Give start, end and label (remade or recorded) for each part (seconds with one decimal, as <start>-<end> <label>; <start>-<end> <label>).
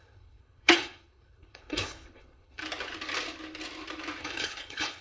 0.0-2.6 remade; 2.6-4.2 recorded; 4.2-5.0 remade